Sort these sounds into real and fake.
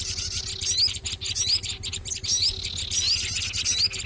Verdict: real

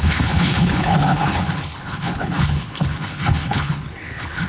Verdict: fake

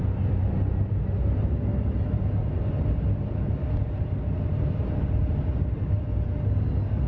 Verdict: real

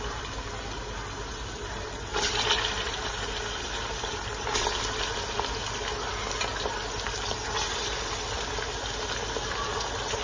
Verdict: real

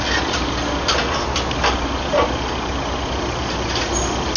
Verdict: real